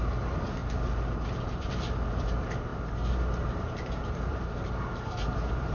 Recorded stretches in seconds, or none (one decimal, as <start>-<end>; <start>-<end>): 0.6-1.4